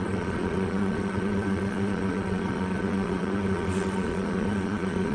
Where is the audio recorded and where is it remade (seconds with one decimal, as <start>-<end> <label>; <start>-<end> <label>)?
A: 0.0-5.1 remade